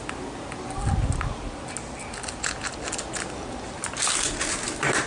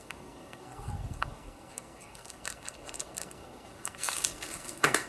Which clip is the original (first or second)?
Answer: first